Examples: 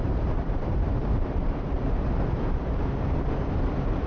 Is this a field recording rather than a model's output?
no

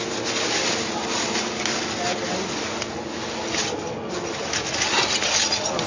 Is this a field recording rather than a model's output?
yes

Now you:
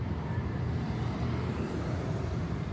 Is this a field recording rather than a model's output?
no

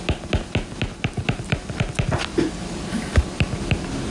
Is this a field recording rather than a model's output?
yes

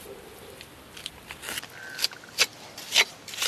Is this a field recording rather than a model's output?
yes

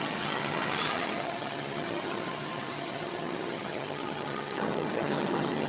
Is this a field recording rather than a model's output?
no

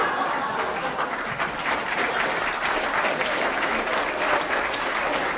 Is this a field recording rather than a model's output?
yes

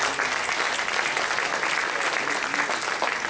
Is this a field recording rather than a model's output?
yes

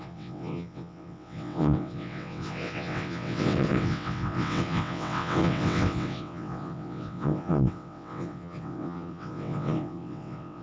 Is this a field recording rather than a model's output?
no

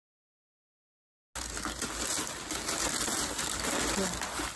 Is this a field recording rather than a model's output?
yes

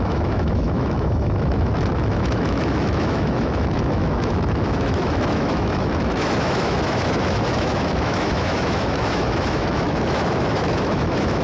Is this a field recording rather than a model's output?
no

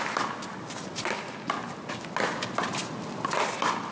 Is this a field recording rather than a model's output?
yes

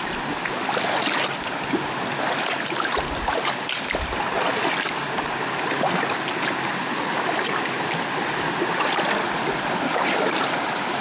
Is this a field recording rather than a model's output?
yes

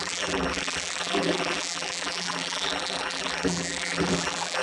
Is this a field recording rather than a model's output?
no